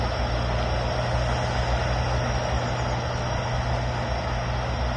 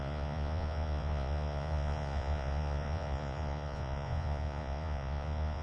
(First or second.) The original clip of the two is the first